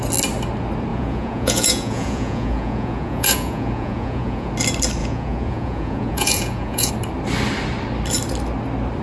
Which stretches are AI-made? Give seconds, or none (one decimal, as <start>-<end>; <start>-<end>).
0.9-4.5; 5.0-6.9